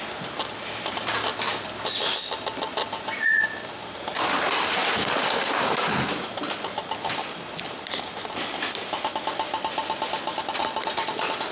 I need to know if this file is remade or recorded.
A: recorded